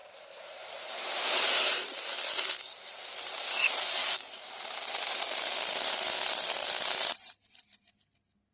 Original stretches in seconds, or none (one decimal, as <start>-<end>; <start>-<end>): 3.5-4.0; 5.1-8.5